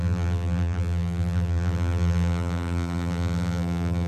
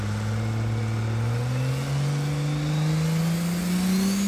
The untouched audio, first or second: second